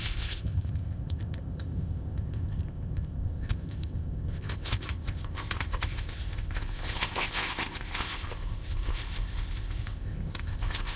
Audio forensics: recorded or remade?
remade